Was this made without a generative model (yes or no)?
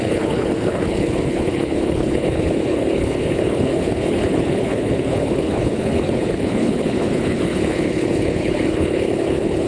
no